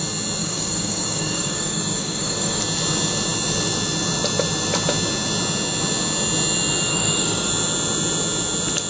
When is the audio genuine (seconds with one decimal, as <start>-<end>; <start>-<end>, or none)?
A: 0.0-0.4; 2.6-6.9; 7.5-8.9